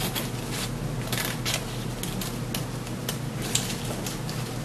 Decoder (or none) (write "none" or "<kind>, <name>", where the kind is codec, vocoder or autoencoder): none